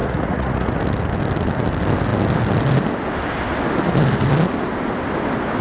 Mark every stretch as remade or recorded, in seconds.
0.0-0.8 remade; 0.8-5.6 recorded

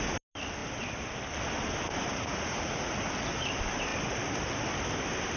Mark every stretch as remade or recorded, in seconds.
0.0-2.1 recorded; 2.1-2.9 remade; 2.9-5.4 recorded

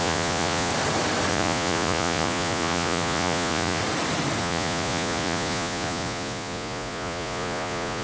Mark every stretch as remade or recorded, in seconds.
0.0-0.7 remade; 0.7-1.3 recorded; 1.3-3.8 remade; 3.8-4.4 recorded; 4.4-8.0 remade

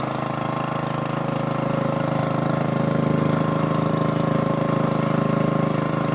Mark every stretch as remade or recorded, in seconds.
0.0-6.1 recorded

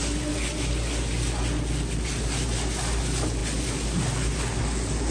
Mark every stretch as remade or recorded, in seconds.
0.0-5.1 recorded